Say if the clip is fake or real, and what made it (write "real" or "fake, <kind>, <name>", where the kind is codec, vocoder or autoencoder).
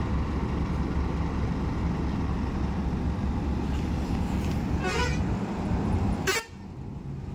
real